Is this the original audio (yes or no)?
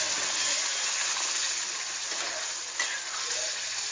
yes